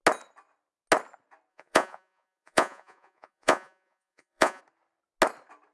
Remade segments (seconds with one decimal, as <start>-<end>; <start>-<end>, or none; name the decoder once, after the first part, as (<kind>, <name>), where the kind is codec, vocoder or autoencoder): 1.5-4.6 (vocoder, Vocos)